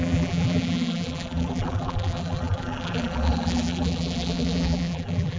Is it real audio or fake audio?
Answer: fake